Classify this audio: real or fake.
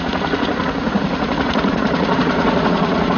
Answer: fake